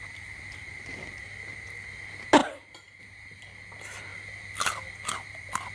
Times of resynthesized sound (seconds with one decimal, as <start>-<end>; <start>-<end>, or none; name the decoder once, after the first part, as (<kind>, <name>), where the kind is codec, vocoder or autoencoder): none